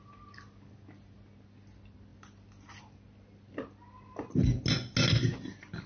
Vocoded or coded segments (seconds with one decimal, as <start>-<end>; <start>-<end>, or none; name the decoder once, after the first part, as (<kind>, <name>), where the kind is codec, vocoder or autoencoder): none